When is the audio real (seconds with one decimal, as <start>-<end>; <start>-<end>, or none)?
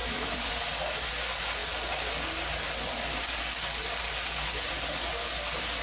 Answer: 0.5-5.8